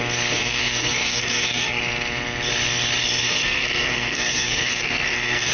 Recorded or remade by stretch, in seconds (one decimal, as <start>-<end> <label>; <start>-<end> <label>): 0.0-0.4 recorded; 0.4-1.8 remade; 1.8-3.2 recorded; 3.2-5.5 remade